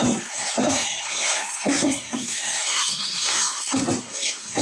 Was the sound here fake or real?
fake